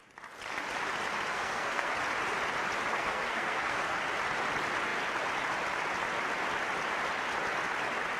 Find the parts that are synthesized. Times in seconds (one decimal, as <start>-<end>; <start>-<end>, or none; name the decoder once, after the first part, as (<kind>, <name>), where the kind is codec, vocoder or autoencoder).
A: 1.3-1.9 (codec, SNAC); 2.9-4.0

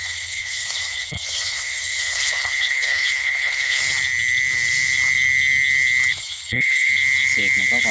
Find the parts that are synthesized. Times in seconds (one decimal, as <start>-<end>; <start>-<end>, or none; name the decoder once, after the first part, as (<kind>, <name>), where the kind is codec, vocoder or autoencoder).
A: 0.0-3.8 (codec, HILCodec); 6.2-6.9

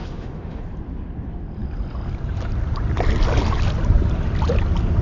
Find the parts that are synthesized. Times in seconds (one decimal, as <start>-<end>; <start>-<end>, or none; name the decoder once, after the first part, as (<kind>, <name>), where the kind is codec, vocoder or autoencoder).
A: 0.0-0.6 (autoencoder, DAC-VAE)

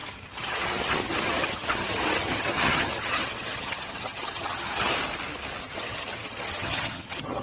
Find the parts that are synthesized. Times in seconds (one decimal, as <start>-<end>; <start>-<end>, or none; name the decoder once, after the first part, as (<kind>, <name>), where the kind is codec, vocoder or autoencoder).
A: 0.0-4.9 (vocoder, HiFi-GAN); 5.6-7.4

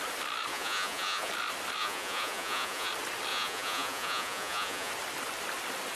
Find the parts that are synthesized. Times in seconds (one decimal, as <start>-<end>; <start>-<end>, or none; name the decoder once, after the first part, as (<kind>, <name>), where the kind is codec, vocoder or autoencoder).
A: 0.5-1.3 (vocoder, Vocos); 1.8-2.9; 3.3-4.9